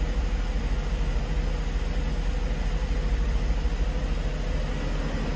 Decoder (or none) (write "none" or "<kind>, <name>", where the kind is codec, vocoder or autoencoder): none